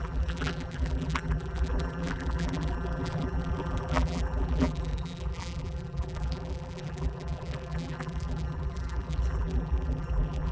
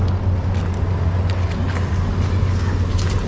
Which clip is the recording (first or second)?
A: second